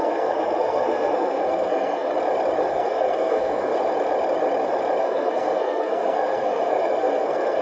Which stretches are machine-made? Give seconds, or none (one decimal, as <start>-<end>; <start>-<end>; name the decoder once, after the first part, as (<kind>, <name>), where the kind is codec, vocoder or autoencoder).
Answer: 0.0-2.1 (codec, SNAC); 2.7-3.7; 5.0-7.6